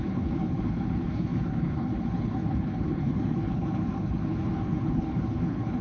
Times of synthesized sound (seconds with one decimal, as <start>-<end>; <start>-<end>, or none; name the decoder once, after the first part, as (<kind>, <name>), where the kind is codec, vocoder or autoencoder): 0.0-5.8 (codec, HILCodec)